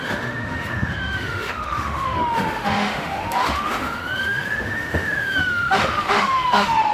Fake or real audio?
fake